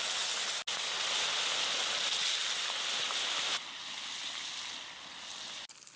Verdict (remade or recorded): recorded